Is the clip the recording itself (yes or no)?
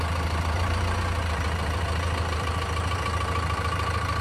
no